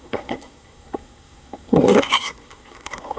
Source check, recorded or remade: remade